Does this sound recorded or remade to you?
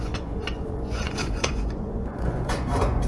remade